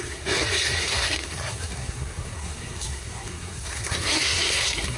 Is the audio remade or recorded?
remade